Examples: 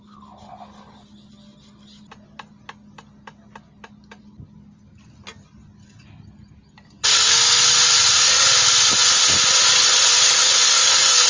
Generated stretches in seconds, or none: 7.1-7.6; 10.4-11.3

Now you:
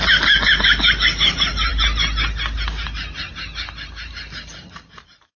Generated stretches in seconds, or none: none

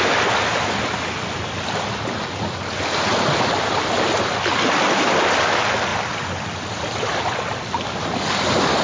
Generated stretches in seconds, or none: none

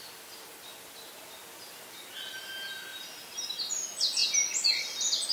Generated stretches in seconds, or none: 2.9-3.7

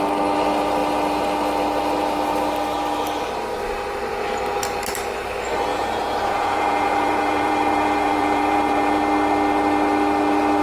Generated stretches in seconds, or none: 5.7-9.0

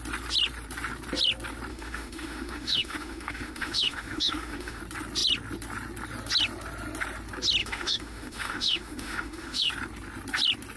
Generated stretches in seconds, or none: 1.7-4.8; 7.6-9.7